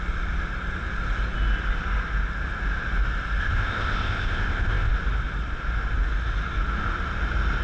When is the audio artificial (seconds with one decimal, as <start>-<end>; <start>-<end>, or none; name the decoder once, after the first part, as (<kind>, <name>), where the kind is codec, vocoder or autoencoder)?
3.4-4.9 (codec, ZipCodec)